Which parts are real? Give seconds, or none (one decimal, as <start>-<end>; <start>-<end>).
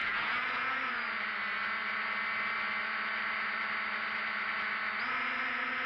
0.7-5.9